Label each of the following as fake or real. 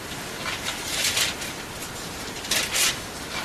real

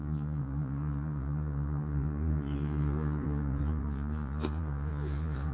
fake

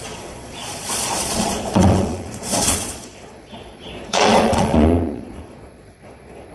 fake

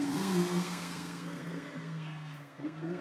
fake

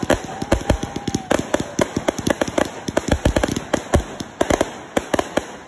real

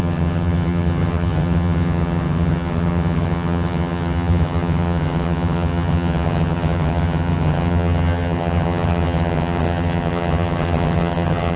fake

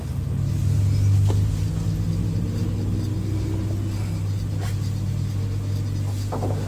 real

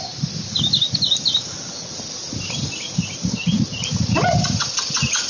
real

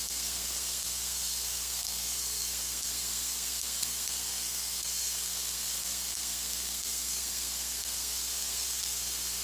fake